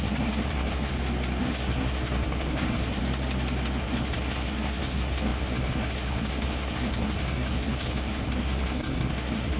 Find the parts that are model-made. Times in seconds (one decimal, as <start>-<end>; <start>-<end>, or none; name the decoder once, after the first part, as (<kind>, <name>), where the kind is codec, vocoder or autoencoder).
0.0-0.9 (codec, SNAC); 1.4-3.0; 3.8-9.6